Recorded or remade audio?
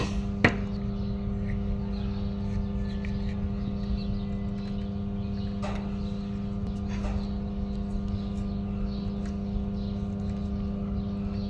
recorded